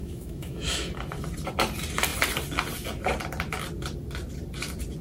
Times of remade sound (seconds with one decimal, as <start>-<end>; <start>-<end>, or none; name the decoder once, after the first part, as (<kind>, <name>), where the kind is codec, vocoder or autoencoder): 0.0-0.9 (autoencoder, DAC-VAE)